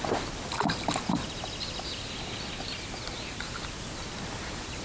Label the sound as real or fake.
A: real